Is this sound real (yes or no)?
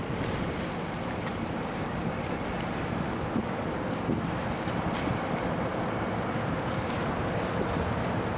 yes